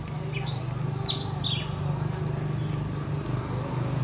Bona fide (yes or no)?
yes